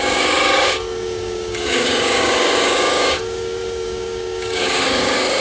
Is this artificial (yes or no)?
yes